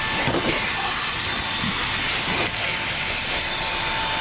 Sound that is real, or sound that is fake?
real